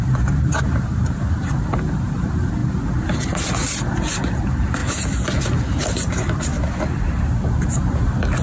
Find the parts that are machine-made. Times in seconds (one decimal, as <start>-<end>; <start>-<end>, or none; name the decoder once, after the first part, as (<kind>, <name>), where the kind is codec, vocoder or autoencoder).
0.0-2.6 (vocoder, BigVGAN v2); 3.8-4.8; 5.4-6.5; 7.8-8.4